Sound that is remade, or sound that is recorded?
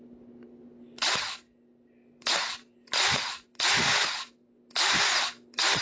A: recorded